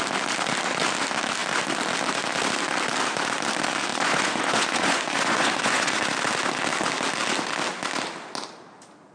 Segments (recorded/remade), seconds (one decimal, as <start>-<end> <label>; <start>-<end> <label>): 0.0-3.9 recorded; 3.9-6.0 remade; 6.0-9.1 recorded